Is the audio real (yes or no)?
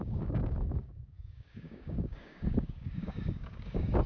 no